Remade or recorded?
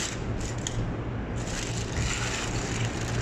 recorded